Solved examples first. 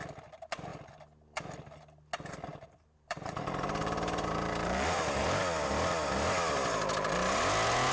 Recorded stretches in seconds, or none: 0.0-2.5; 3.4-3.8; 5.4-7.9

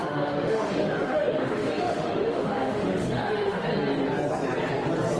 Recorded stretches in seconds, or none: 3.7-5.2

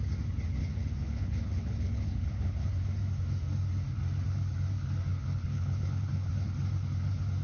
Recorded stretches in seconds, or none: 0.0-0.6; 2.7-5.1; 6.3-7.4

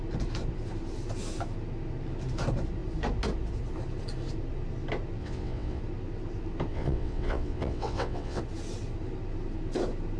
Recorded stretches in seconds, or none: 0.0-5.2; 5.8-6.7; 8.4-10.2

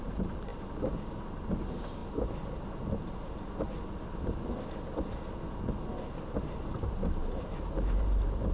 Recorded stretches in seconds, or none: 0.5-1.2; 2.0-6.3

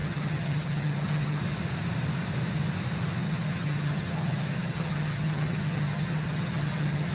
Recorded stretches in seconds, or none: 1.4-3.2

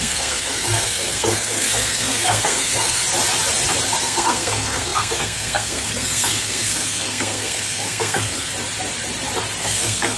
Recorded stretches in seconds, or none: 3.0-4.0; 8.5-9.6